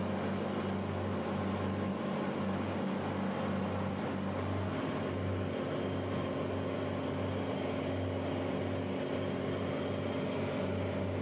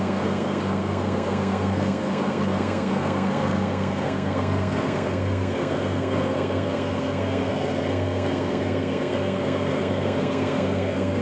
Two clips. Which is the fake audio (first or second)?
second